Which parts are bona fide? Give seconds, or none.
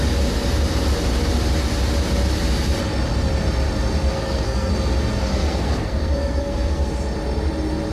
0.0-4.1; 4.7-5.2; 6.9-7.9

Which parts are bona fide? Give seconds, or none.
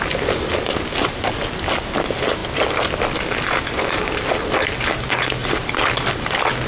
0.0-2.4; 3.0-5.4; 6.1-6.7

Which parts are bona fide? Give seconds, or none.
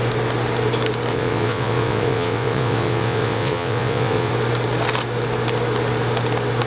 0.0-1.1; 4.3-6.7